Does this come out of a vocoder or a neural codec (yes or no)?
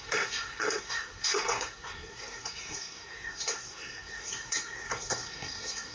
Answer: yes